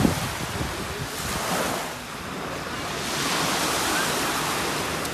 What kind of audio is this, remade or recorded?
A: recorded